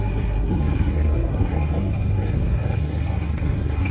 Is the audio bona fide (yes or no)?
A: no